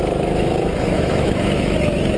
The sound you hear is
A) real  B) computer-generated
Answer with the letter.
B